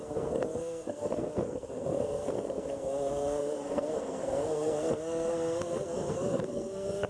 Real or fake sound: fake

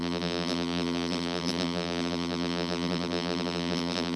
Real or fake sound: fake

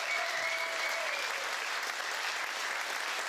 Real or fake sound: real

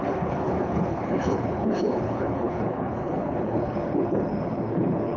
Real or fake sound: fake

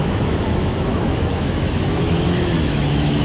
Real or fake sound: fake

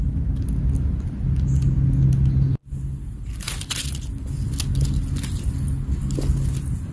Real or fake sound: real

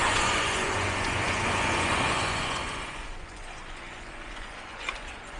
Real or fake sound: fake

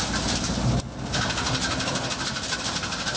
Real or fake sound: real